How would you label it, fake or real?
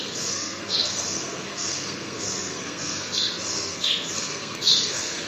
fake